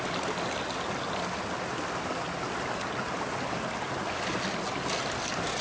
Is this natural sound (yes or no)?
yes